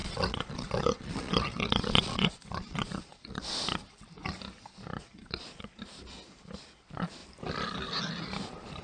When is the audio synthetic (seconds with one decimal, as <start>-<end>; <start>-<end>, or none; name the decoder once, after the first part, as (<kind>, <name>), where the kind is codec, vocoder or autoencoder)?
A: 0.0-3.4 (vocoder, Vocos); 4.9-5.8